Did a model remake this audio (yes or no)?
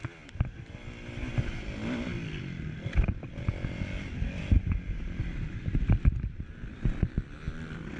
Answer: no